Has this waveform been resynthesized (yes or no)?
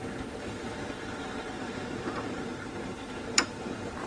yes